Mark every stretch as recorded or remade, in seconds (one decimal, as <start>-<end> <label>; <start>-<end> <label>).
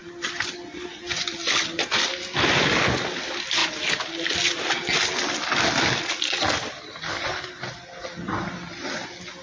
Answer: 0.0-9.4 recorded